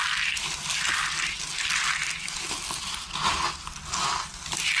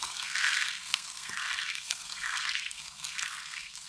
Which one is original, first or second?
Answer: first